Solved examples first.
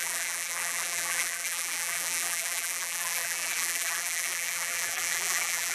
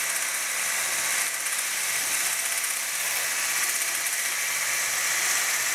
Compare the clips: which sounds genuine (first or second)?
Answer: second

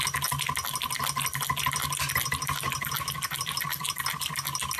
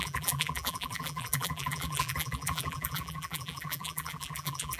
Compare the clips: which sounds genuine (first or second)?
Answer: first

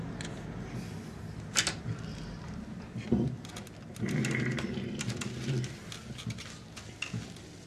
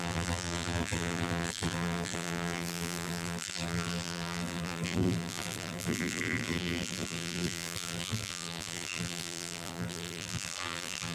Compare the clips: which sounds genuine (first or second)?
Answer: first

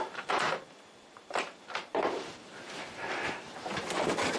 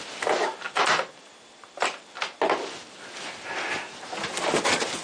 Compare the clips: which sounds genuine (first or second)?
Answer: second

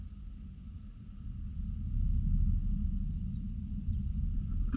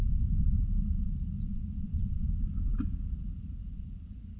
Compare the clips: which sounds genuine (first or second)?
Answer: first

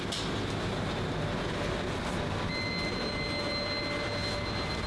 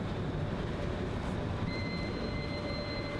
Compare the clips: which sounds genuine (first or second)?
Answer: first